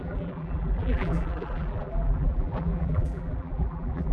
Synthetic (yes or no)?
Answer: yes